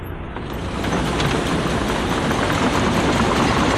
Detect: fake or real real